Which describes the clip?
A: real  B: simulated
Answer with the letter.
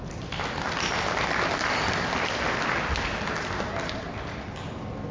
A